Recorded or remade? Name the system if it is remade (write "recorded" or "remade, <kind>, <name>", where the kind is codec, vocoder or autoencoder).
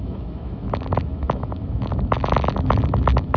remade, autoencoder, DAC-VAE